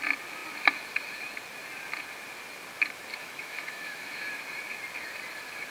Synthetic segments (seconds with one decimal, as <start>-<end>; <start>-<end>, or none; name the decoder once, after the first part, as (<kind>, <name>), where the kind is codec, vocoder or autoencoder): 3.1-4.3 (autoencoder, DAC-VAE)